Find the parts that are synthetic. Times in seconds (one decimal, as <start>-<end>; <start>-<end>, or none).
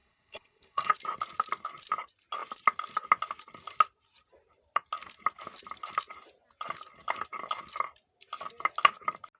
0.0-0.9